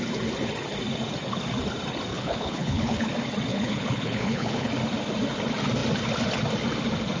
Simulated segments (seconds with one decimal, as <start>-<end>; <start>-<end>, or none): 2.1-3.1; 3.5-4.7